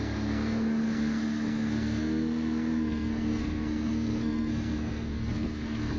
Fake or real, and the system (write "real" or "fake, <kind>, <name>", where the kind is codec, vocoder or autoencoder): fake, codec, SNAC